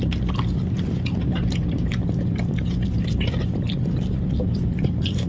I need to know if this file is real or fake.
real